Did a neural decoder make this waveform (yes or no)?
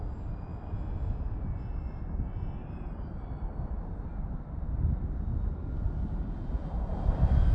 no